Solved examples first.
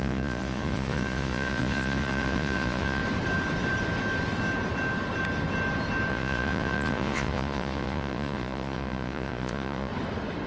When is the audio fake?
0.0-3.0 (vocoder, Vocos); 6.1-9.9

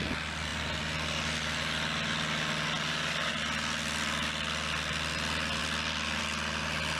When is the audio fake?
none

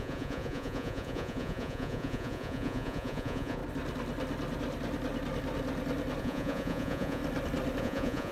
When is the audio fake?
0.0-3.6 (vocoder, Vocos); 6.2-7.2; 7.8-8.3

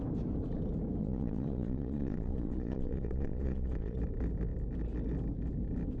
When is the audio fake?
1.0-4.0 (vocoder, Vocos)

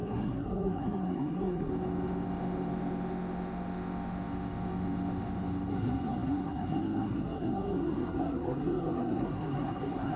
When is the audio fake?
0.0-1.7 (codec, SNAC); 5.7-10.2